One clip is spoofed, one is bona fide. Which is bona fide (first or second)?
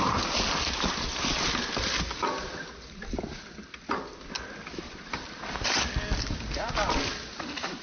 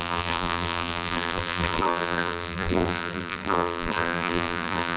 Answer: first